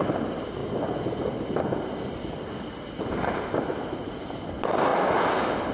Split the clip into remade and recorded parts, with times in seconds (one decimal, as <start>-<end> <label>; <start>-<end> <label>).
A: 0.0-5.7 recorded